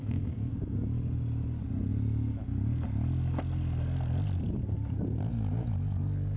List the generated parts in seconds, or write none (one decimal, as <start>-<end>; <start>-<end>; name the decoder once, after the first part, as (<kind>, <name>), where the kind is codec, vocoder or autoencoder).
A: 0.0-0.5 (codec, SNAC)